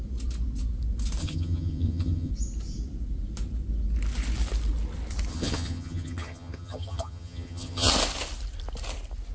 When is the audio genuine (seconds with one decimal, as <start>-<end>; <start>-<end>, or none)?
0.0-1.2; 2.3-5.3; 7.9-9.3